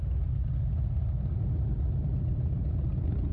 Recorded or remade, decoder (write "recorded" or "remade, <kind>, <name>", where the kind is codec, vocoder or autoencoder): recorded